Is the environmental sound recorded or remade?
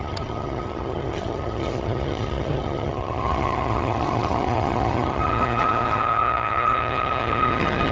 remade